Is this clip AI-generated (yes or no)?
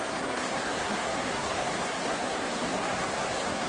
yes